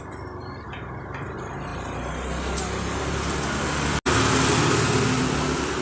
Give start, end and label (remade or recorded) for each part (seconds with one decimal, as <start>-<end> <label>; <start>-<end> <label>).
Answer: 0.0-5.8 recorded